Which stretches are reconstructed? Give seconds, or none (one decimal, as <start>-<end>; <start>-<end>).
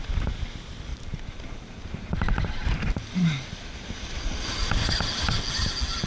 0.9-1.4